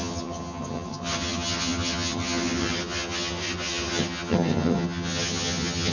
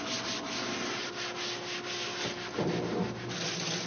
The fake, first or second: first